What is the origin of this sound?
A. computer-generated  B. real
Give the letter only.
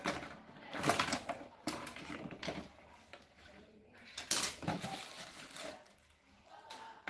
B